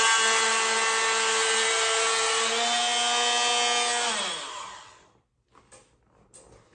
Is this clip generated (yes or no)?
no